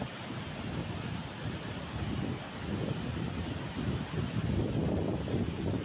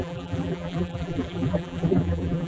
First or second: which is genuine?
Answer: first